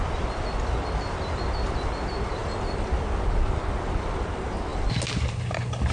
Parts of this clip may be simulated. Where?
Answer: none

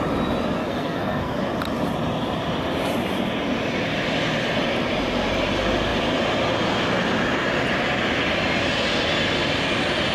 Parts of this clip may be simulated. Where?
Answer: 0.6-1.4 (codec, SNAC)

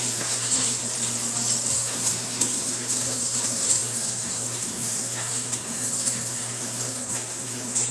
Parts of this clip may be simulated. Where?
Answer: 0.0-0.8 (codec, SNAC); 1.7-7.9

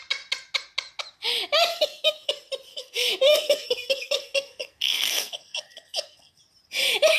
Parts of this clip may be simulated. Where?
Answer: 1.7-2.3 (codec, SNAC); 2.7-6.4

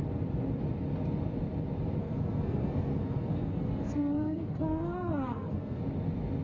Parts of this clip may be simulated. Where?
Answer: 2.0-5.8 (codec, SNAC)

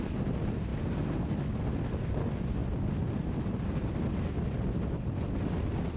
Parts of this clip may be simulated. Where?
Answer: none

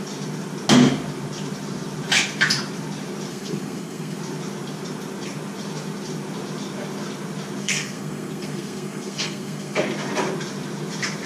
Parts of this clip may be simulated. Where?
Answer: 3.3-4.2 (codec, SNAC); 7.6-9.8

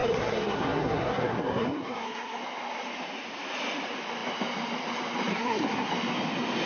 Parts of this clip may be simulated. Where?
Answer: 0.0-2.4 (codec, SNAC); 5.3-5.9